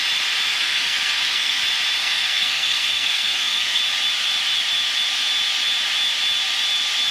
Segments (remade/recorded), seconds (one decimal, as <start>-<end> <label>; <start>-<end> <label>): 0.0-0.5 recorded; 0.5-1.6 remade; 1.6-2.0 recorded; 2.0-3.8 remade; 3.8-7.1 recorded